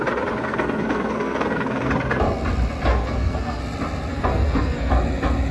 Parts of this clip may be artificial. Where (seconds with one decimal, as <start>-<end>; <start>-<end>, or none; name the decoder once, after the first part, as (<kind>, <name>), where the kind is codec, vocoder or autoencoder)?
0.4-1.9 (codec, SNAC); 2.9-3.6; 4.1-4.9